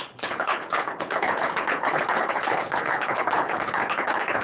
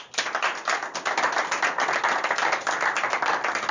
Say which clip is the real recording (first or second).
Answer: second